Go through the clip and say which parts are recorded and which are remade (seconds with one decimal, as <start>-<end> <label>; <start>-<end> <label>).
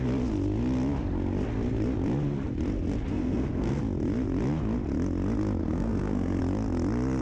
0.0-3.1 recorded; 3.1-3.8 remade; 3.8-5.6 recorded; 5.6-6.4 remade; 6.4-7.2 recorded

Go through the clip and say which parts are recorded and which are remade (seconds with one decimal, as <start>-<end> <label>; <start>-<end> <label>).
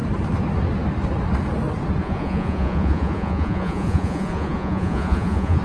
0.0-2.0 recorded; 2.0-5.6 remade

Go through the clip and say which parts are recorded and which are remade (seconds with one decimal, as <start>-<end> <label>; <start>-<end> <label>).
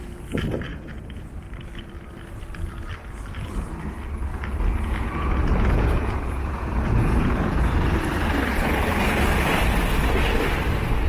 0.0-0.7 recorded; 0.7-1.3 remade; 1.3-4.3 recorded; 4.3-7.6 remade; 7.6-11.1 recorded